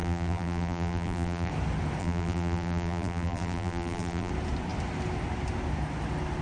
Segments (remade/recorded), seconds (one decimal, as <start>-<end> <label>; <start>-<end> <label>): 0.0-1.5 remade; 1.5-2.0 recorded; 2.0-4.3 remade; 4.3-6.4 recorded